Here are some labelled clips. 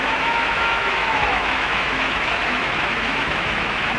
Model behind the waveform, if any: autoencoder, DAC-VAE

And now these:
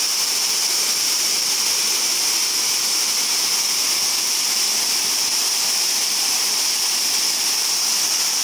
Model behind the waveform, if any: vocoder, BigVGAN v2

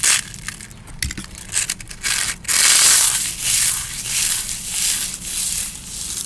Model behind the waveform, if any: none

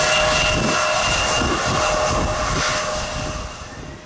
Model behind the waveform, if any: none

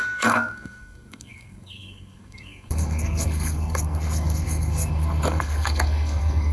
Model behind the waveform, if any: codec, SNAC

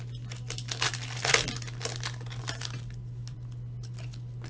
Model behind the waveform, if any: none